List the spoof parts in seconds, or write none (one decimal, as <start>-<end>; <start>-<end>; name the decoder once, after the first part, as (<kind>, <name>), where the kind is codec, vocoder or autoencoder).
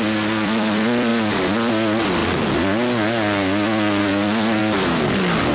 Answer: 0.0-1.1 (vocoder, BigVGAN v2); 1.7-2.2; 4.0-5.5